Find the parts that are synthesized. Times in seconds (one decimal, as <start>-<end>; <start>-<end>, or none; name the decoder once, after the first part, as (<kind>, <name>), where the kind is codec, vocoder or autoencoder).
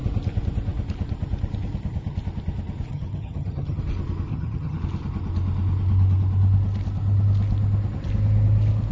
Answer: 2.9-3.8 (vocoder, HiFi-GAN); 4.3-4.8